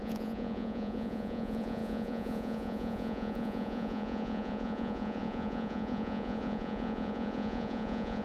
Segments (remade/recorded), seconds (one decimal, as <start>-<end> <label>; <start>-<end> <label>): 0.0-8.2 remade